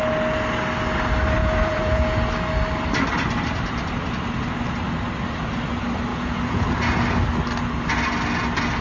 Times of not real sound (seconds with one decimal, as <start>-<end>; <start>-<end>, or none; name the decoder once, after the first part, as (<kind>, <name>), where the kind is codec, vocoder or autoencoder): 1.4-2.3 (vocoder, Vocos); 6.1-6.7

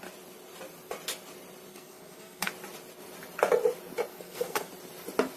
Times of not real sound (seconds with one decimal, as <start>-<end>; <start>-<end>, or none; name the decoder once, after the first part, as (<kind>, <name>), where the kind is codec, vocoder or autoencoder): 1.7-2.5 (codec, SNAC); 4.1-4.7

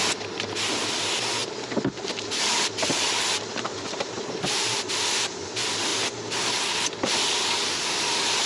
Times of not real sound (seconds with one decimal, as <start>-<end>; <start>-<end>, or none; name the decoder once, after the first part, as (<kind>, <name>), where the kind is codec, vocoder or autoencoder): 3.5-4.7 (vocoder, BigVGAN v2)

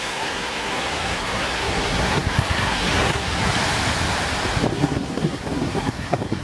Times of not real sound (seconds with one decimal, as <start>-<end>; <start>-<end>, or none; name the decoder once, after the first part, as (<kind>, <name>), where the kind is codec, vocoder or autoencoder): 0.0-3.5 (codec, SNAC); 4.7-6.4

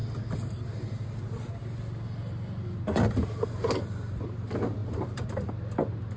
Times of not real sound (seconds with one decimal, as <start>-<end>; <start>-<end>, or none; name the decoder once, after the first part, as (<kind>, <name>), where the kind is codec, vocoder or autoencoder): 4.8-5.5 (vocoder, BigVGAN v2)

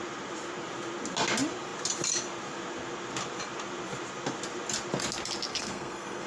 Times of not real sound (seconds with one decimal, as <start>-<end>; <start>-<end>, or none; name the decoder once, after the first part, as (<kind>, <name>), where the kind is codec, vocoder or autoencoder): 5.5-6.3 (codec, SNAC)